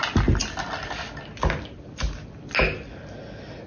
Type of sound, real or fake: real